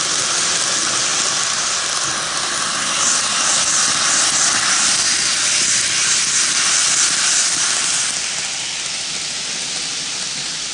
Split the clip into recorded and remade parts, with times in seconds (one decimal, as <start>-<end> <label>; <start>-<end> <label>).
0.0-10.7 recorded